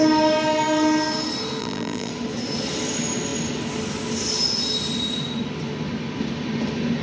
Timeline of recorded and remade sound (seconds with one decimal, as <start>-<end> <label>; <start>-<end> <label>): 0.0-1.6 recorded; 1.6-2.1 remade; 2.1-7.0 recorded